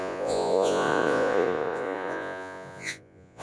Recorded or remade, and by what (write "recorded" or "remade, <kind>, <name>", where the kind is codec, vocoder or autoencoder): remade, vocoder, Vocos